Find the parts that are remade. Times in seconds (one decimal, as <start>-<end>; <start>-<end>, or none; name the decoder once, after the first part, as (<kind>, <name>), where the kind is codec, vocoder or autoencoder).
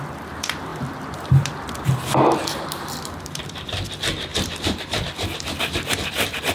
0.0-6.5 (vocoder, BigVGAN v2)